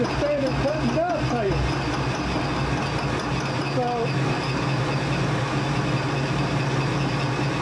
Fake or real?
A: real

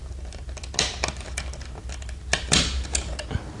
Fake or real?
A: real